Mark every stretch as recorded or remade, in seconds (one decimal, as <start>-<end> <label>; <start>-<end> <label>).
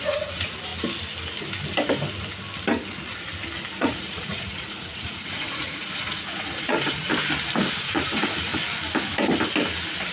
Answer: 0.0-0.7 remade; 0.7-3.7 recorded; 3.7-7.1 remade; 7.1-7.7 recorded; 7.7-8.5 remade; 8.5-10.1 recorded